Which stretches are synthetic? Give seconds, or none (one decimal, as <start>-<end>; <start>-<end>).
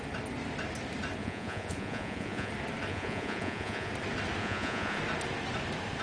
1.2-2.5; 2.9-3.9; 4.4-5.0